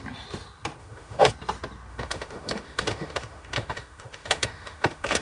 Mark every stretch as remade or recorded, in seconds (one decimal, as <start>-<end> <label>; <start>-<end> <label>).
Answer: 0.0-0.8 recorded; 0.8-1.3 remade; 1.3-1.9 recorded; 1.9-5.2 remade

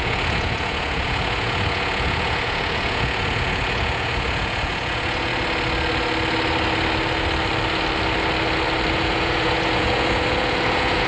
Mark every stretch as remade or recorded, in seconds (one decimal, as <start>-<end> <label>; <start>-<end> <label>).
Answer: 0.0-5.3 remade; 5.3-8.9 recorded; 8.9-11.1 remade

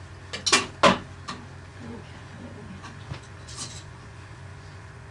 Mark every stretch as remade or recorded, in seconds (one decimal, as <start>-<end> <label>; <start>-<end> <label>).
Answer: 0.0-1.7 recorded; 1.7-5.1 remade

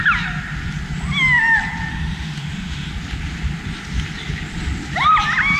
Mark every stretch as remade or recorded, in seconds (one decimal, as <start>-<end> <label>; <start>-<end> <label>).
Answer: 0.0-1.9 recorded; 1.9-2.9 remade; 2.9-5.6 recorded

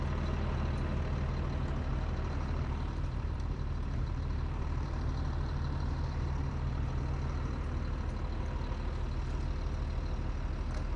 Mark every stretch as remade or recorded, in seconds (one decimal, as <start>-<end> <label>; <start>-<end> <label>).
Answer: 0.0-1.9 recorded; 1.9-6.9 remade; 6.9-11.0 recorded